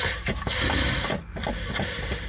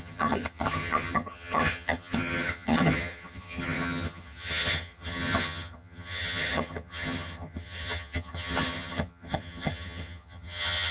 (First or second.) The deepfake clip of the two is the second